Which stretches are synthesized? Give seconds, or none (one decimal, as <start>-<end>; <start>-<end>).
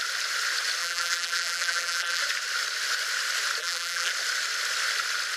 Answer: 0.8-2.2; 3.6-4.1